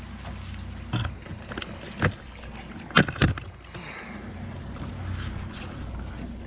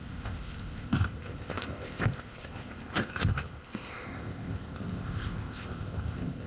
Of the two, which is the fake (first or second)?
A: second